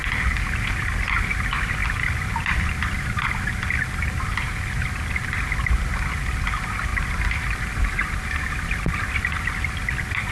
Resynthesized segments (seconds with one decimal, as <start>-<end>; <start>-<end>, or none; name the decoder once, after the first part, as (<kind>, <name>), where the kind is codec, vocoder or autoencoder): none